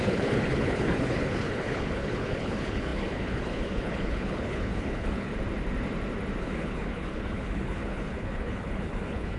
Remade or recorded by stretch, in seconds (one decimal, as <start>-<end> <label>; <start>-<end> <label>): 0.0-5.3 remade; 5.3-6.4 recorded; 6.4-9.4 remade